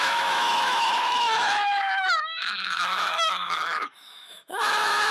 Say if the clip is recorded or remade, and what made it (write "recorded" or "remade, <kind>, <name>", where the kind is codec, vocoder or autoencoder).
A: remade, autoencoder, DAC-VAE